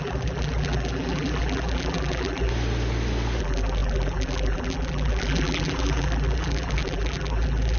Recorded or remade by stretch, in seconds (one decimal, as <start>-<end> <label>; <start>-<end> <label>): 0.0-2.5 remade; 2.5-3.4 recorded; 3.4-7.8 remade